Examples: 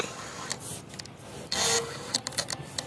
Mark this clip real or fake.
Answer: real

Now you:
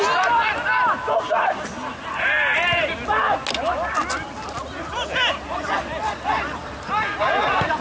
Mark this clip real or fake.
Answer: real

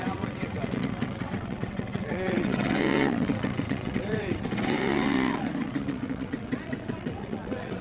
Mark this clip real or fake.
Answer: fake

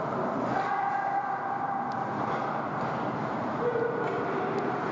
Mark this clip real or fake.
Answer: real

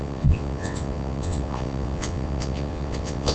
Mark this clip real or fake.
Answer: fake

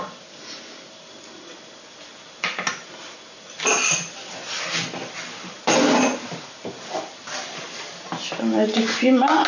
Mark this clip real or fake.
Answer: real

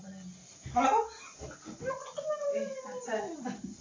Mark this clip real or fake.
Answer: real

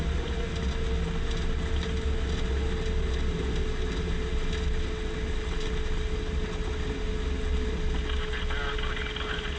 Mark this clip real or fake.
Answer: real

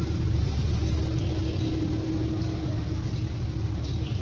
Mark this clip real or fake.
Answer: real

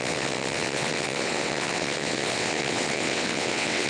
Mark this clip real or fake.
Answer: fake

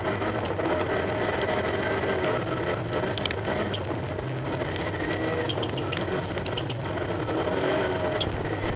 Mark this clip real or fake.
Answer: real